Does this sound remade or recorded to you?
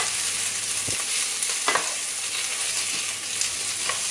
recorded